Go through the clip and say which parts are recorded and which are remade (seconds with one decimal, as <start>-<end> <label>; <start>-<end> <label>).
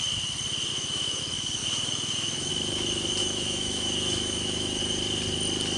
0.0-0.7 recorded; 0.7-1.2 remade; 1.2-1.6 recorded; 1.6-2.5 remade; 2.5-3.2 recorded; 3.2-4.8 remade; 4.8-5.8 recorded